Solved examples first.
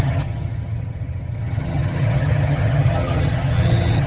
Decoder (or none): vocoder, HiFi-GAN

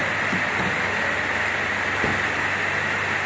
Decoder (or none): none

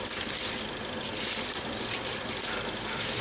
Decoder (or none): none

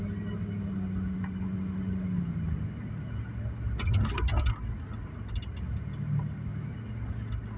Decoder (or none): none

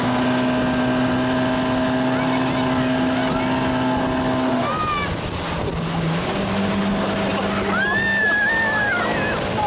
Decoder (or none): none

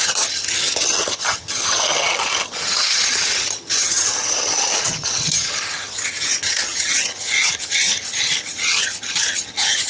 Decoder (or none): vocoder, HiFi-GAN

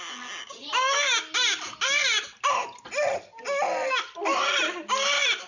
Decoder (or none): none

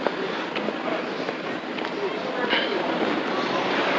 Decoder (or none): none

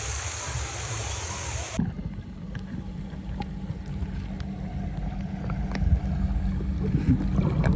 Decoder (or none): none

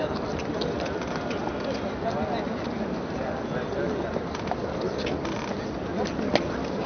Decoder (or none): none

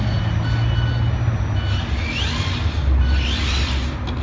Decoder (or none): none